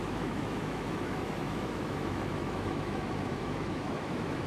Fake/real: fake